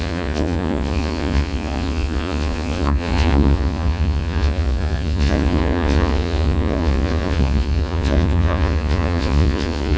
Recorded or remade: remade